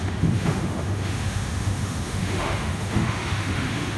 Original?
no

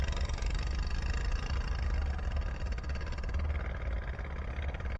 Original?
yes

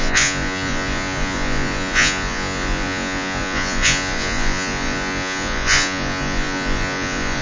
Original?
no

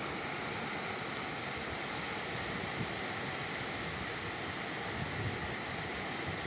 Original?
yes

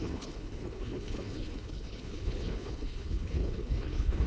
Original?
no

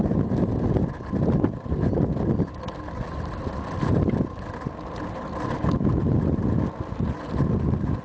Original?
yes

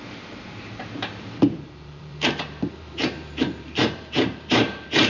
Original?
no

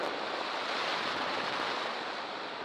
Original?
yes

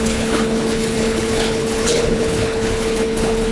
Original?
no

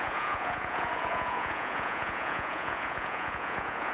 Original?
no